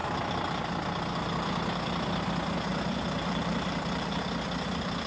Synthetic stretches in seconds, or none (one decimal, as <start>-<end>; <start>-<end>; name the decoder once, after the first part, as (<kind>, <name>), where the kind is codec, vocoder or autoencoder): 2.7-4.2 (vocoder, BigVGAN v2)